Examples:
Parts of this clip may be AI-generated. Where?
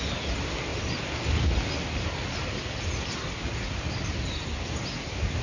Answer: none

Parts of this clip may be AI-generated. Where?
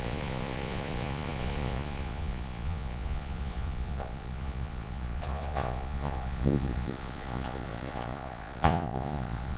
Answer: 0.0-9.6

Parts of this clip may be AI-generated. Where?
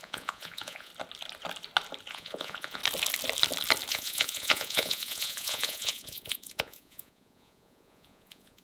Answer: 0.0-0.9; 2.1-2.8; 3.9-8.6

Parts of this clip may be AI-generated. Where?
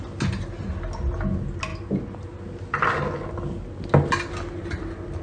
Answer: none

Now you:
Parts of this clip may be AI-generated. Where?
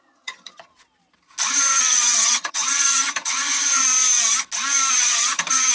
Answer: 0.0-0.7; 1.5-3.8; 4.9-5.7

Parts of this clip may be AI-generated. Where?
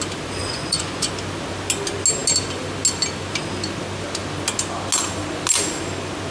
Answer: 0.4-1.1